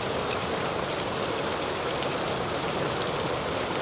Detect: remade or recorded recorded